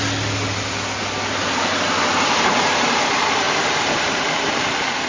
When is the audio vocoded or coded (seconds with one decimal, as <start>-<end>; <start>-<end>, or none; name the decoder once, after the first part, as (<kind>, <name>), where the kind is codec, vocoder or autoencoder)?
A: 1.4-4.5 (vocoder, BigVGAN v2)